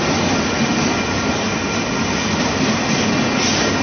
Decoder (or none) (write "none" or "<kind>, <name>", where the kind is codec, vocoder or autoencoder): none